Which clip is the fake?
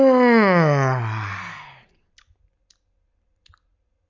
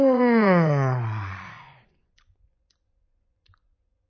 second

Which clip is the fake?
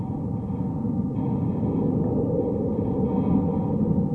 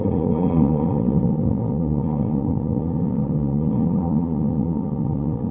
second